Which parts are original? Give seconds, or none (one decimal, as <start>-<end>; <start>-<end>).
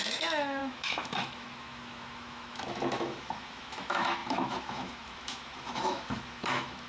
none